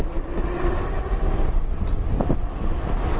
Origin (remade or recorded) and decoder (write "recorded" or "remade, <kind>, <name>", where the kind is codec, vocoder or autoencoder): recorded